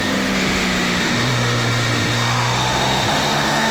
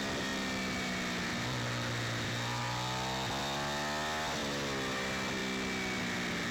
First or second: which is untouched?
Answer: second